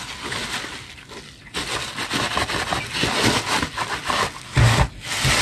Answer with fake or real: real